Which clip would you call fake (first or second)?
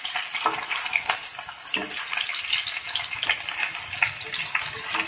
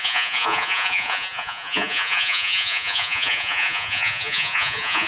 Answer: second